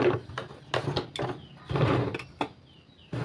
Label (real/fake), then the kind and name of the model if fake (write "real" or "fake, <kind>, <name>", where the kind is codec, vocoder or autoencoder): real